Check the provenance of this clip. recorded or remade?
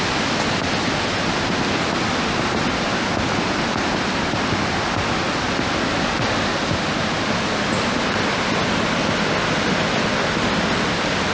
recorded